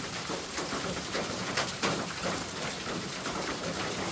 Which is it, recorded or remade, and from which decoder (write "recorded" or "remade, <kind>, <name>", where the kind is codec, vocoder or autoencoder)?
remade, vocoder, BigVGAN v2